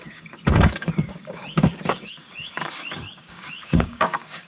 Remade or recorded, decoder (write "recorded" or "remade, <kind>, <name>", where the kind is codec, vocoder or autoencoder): remade, codec, DAC